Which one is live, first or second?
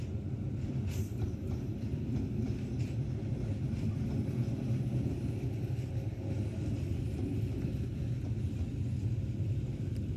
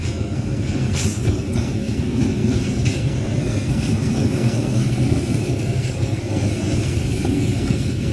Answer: first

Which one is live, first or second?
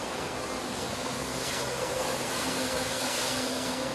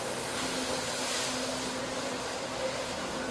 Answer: second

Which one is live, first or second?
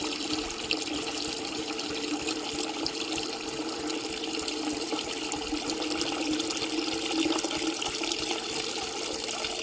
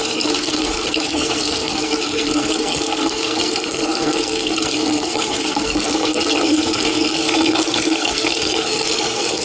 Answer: first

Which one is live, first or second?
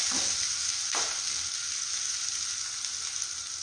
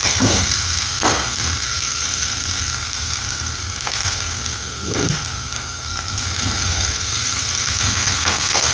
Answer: first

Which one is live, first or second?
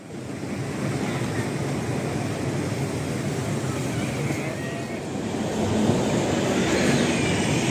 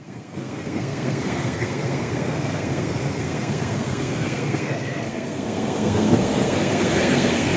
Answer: first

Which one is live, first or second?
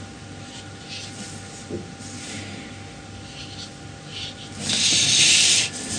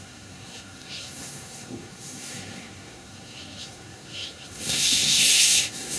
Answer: first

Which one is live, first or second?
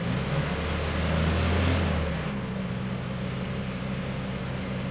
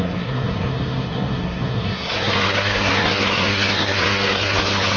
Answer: first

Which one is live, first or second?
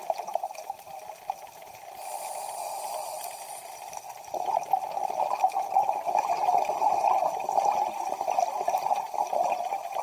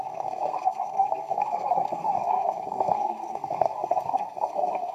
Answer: first